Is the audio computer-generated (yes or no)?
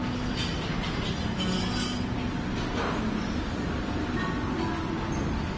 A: no